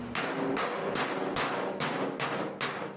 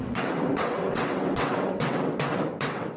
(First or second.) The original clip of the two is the first